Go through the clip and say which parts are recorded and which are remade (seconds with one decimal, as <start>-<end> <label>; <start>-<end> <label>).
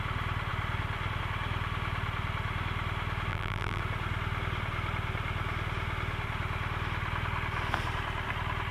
0.0-3.3 recorded; 3.3-3.8 remade; 3.8-8.7 recorded